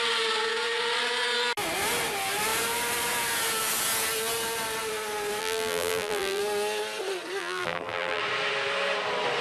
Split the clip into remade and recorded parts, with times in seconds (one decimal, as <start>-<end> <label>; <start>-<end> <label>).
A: 0.0-5.4 recorded; 5.4-6.4 remade; 6.4-7.4 recorded; 7.4-8.2 remade; 8.2-9.4 recorded